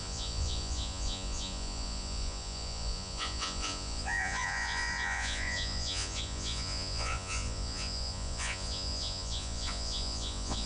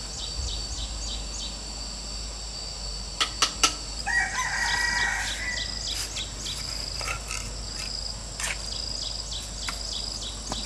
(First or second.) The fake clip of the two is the first